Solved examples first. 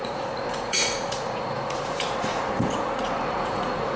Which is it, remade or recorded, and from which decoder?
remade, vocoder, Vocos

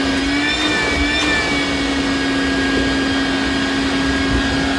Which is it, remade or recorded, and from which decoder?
recorded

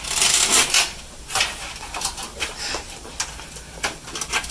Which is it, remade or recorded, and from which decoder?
recorded